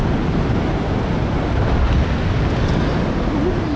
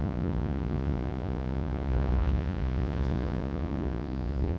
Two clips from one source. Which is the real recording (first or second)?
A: first